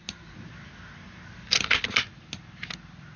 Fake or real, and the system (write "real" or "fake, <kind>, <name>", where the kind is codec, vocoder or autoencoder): real